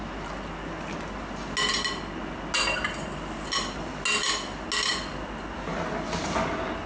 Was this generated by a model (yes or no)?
no